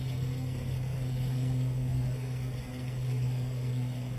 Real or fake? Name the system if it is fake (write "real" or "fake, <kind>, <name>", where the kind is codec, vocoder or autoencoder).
fake, codec, SNAC